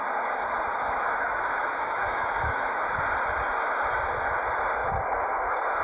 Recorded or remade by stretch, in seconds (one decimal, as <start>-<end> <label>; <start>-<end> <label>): 0.0-0.7 recorded; 0.7-3.0 remade; 3.0-5.8 recorded